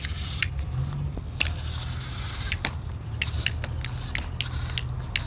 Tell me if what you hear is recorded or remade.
recorded